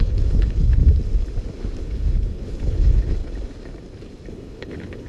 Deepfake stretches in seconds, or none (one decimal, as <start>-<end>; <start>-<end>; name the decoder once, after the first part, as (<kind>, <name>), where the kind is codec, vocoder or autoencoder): 0.0-0.8 (codec, HILCodec); 1.8-3.2; 4.3-5.1